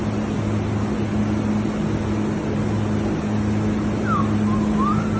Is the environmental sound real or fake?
real